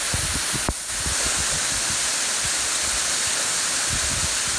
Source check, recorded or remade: recorded